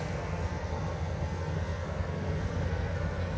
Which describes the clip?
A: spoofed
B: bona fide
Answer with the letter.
A